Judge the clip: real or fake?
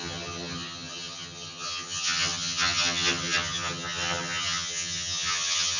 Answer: fake